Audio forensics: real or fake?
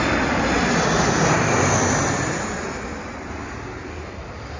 real